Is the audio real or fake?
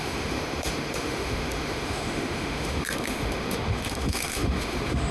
fake